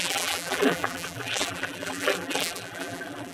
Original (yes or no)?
no